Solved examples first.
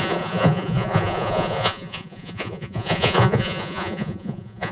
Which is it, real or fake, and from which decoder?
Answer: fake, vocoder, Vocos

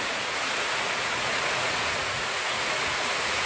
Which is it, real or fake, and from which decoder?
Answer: fake, vocoder, Vocos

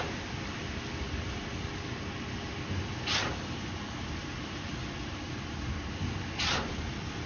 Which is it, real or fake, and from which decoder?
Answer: real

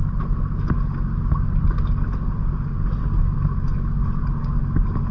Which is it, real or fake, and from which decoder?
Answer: real